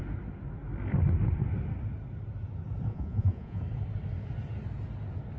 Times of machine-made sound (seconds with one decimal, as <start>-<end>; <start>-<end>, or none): 2.9-3.6